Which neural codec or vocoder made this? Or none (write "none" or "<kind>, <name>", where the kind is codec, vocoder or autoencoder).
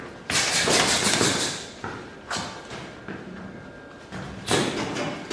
vocoder, BigVGAN v2